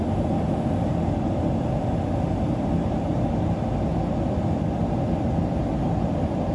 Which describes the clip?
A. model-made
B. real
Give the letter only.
B